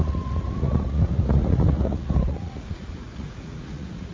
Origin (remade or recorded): remade